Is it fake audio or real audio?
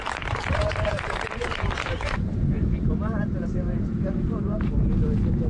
fake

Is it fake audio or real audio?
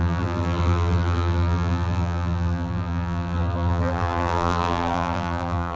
fake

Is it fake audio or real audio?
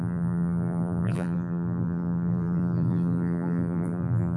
fake